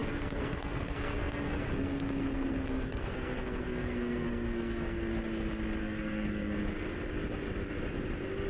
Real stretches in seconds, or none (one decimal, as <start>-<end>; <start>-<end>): 5.1-5.8; 6.6-8.5